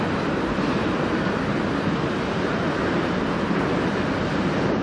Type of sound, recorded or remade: remade